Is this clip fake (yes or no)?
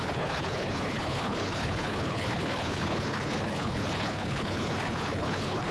yes